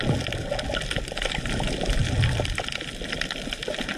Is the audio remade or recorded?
recorded